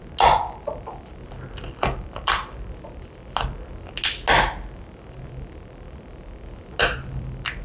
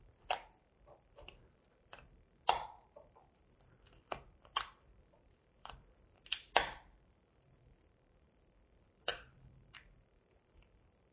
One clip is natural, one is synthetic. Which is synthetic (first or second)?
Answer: second